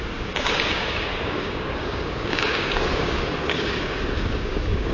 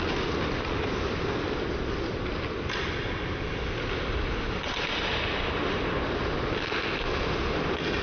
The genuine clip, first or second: second